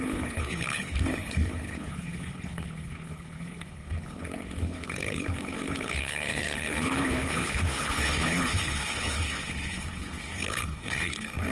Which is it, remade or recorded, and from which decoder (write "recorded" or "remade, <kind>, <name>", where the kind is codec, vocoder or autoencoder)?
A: remade, codec, HILCodec